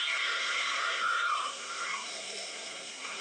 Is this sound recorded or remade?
remade